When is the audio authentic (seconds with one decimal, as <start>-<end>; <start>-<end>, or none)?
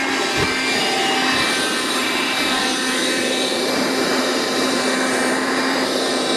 0.0-2.0; 2.6-3.2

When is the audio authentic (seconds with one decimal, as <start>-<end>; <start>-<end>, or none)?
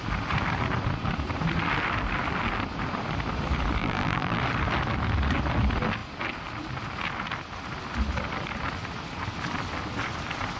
0.0-3.8; 4.4-10.6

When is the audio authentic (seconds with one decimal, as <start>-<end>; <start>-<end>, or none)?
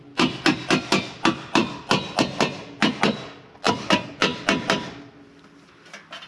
none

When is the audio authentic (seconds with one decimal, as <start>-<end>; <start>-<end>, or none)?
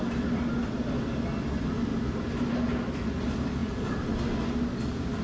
0.0-1.9; 2.5-3.6; 4.1-5.2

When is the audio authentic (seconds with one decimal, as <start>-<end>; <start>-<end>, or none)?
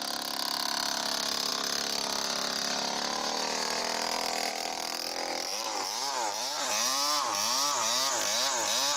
0.0-4.5; 6.7-9.0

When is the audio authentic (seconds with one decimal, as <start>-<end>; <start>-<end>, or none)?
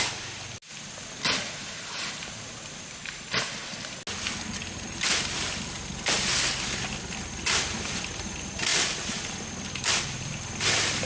0.0-11.1